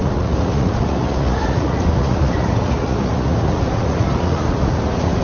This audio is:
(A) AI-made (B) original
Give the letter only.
A